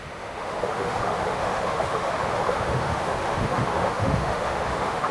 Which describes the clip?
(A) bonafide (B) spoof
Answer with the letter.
B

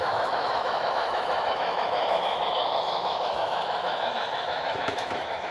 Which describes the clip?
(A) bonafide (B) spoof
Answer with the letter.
B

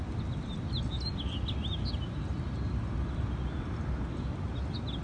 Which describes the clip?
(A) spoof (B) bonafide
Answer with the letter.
B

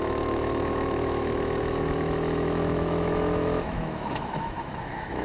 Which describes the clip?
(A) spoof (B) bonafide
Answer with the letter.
A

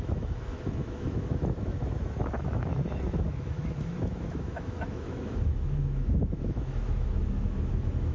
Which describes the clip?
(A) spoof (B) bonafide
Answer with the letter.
A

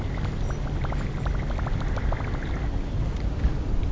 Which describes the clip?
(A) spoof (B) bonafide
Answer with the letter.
B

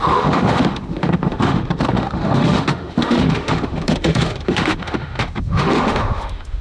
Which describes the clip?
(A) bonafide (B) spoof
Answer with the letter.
B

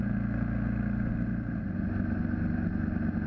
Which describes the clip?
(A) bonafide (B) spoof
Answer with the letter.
A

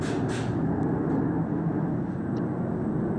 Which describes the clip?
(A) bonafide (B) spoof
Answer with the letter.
A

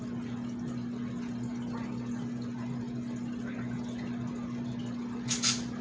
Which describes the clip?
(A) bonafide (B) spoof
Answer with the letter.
A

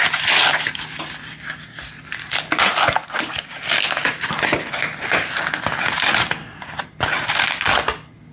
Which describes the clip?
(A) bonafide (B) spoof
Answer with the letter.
A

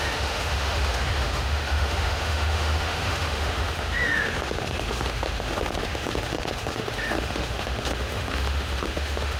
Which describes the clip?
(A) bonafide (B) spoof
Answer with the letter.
B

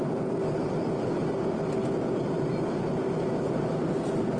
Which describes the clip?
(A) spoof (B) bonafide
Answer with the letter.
B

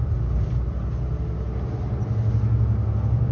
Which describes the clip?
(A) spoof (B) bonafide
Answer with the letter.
B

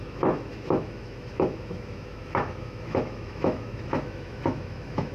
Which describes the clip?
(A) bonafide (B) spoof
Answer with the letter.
B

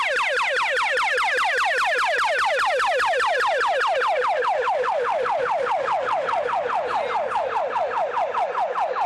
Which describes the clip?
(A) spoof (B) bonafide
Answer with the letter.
B